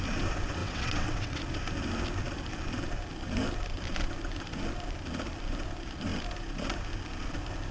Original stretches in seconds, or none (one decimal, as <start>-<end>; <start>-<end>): 0.0-0.6; 1.4-7.7